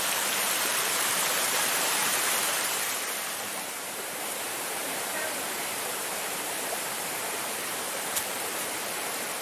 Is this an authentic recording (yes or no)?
no